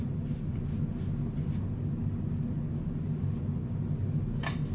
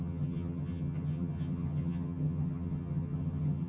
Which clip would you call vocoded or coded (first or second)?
second